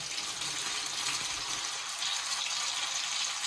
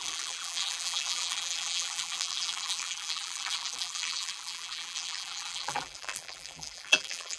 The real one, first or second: first